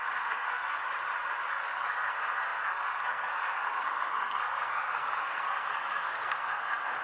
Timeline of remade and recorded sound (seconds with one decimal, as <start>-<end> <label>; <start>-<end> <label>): 0.0-0.8 remade; 0.8-1.5 recorded; 1.5-7.0 remade